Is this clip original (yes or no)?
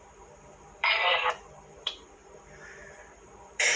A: no